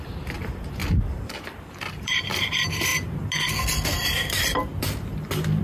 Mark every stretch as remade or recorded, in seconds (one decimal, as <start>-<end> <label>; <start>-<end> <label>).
0.0-0.8 remade; 0.8-1.9 recorded; 1.9-2.9 remade; 2.9-4.0 recorded; 4.0-4.7 remade; 4.7-5.6 recorded